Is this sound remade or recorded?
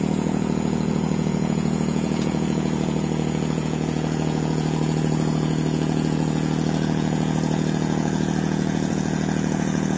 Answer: remade